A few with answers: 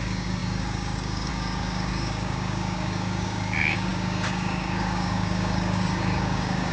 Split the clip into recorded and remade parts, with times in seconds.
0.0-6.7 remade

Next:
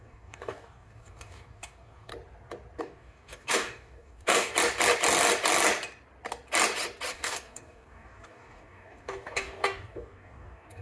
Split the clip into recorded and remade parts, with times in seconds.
0.0-2.1 remade; 2.1-2.8 recorded; 2.8-4.5 remade; 4.5-7.1 recorded; 7.1-10.8 remade

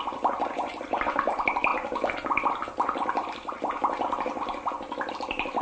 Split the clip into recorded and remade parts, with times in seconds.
0.0-5.6 recorded

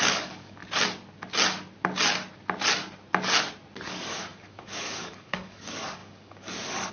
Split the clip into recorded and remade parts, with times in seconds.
0.0-0.6 remade; 0.6-3.9 recorded; 3.9-6.9 remade

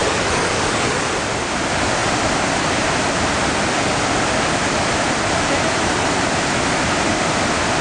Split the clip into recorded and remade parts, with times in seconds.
0.0-1.0 remade; 1.0-7.8 recorded

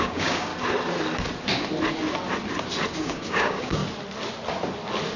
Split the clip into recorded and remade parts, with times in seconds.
0.0-0.5 remade; 0.5-3.0 recorded; 3.0-3.8 remade; 3.8-5.2 recorded

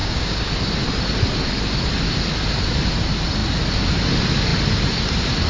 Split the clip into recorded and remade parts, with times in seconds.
0.0-0.5 remade; 0.5-5.5 recorded

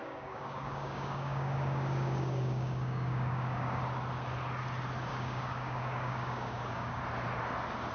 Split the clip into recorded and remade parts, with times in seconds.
0.0-3.8 remade; 3.8-5.1 recorded; 5.1-7.0 remade; 7.0-7.9 recorded